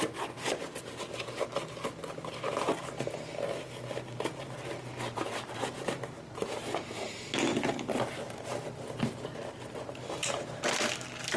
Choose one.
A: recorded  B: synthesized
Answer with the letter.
A